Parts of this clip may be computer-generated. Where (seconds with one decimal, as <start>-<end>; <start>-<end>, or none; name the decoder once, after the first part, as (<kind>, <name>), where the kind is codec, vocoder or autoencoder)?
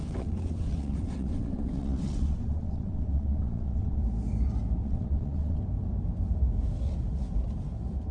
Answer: 0.0-4.0 (vocoder, WaveNeXt); 4.8-5.6